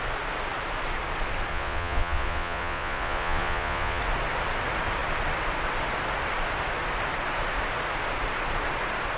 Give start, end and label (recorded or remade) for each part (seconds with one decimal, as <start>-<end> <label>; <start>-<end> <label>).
0.0-1.5 recorded; 1.5-4.0 remade; 4.0-9.2 recorded